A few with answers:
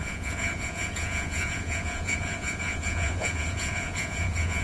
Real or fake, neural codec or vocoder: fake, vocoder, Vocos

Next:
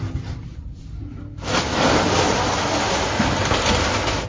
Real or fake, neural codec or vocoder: real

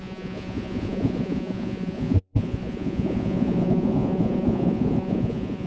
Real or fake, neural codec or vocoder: fake, vocoder, Vocos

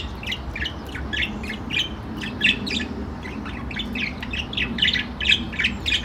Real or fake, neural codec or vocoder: real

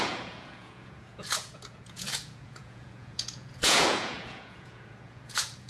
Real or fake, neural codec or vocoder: fake, vocoder, Vocos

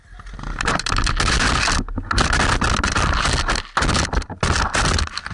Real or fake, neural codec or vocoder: real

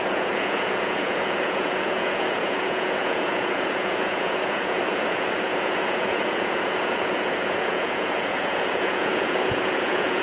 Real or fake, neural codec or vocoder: fake, vocoder, Vocos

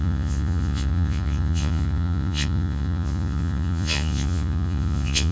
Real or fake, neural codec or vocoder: fake, vocoder, Vocos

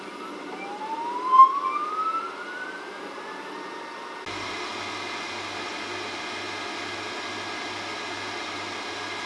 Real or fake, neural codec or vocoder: real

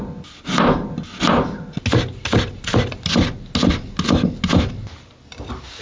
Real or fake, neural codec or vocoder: real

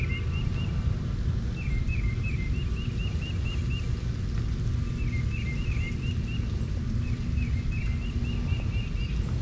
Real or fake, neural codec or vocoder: real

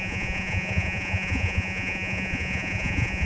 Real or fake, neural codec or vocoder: fake, vocoder, Vocos